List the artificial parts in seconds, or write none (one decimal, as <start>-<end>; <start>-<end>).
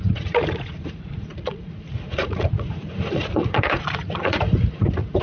0.0-5.2